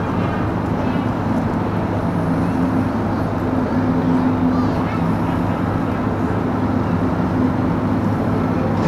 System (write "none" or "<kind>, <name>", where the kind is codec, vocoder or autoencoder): none